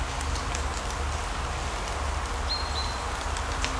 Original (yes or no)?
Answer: yes